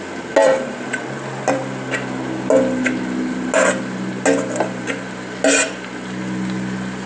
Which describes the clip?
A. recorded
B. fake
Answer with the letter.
A